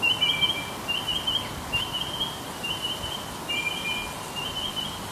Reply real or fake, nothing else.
real